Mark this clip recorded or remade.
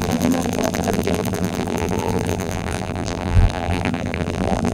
remade